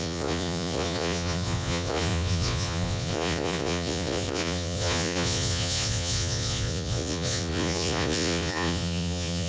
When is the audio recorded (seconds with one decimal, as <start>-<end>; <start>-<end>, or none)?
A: none

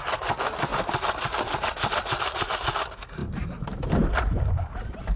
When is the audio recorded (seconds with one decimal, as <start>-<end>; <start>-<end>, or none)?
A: 0.0-0.7; 2.6-3.2

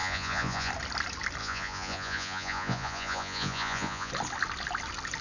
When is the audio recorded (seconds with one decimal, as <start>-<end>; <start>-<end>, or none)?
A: 0.7-1.4; 4.1-5.2

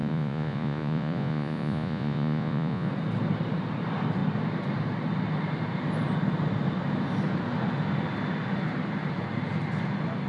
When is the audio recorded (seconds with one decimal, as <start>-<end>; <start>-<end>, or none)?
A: 2.9-10.3